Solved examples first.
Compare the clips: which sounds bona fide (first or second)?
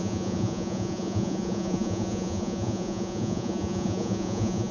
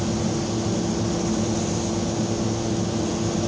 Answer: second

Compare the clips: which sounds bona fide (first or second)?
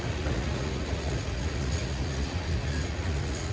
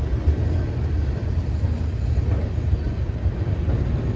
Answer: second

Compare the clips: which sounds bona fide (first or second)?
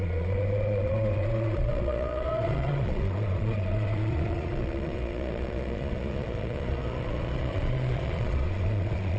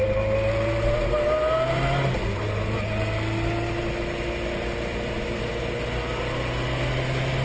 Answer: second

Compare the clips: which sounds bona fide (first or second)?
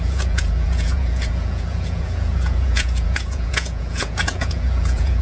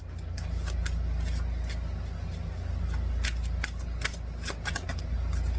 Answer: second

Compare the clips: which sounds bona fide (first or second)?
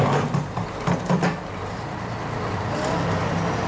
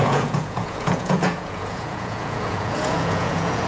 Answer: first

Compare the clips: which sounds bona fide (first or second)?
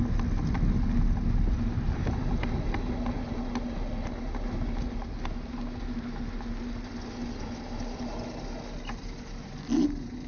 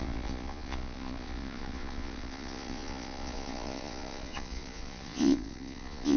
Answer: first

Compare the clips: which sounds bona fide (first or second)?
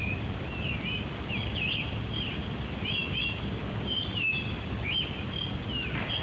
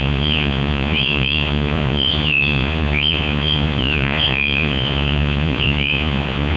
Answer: first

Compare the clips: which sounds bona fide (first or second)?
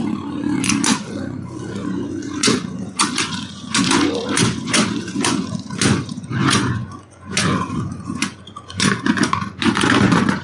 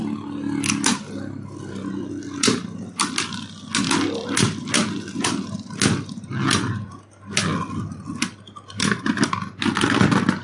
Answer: second